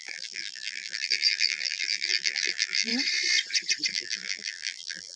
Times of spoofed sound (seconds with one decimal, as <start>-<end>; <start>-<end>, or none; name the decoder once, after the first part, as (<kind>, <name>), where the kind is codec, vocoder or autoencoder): 0.0-2.9 (vocoder, BigVGAN v2); 3.9-5.2